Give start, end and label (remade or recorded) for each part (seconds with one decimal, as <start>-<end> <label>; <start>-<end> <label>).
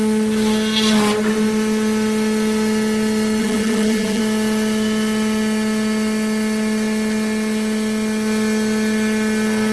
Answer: 0.0-3.4 recorded; 3.4-4.2 remade; 4.2-9.7 recorded